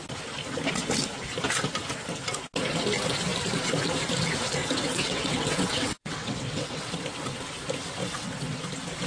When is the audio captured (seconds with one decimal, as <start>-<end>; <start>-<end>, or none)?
0.0-4.6; 6.9-8.0; 8.6-9.1